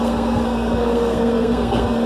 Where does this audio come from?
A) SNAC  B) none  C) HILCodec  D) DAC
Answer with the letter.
A